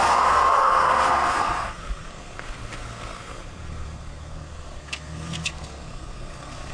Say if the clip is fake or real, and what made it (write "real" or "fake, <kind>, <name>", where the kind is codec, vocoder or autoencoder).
fake, codec, SNAC